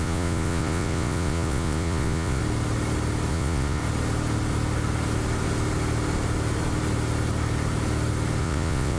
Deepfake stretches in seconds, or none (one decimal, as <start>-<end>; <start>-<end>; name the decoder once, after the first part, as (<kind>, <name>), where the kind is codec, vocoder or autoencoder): 0.0-2.4 (vocoder, Vocos); 3.3-3.8; 8.4-9.0